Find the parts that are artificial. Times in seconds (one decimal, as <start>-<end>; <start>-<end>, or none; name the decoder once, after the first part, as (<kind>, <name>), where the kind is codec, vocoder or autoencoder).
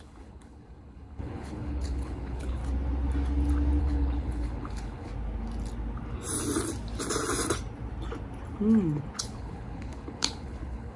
0.0-2.6 (codec, HILCodec); 3.8-5.1; 9.2-11.0